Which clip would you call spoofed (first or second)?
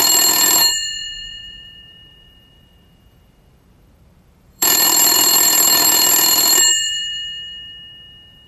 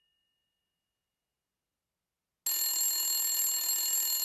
first